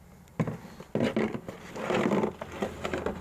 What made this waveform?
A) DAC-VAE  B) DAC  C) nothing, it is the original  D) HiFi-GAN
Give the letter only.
C